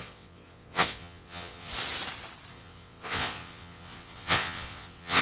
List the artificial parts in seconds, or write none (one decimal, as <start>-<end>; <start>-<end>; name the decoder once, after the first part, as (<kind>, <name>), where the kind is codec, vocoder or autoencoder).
0.0-1.7 (vocoder, WaveNeXt); 2.5-5.2